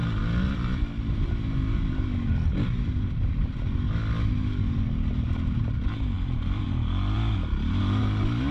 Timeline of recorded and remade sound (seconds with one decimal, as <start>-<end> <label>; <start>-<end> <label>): 0.0-8.5 recorded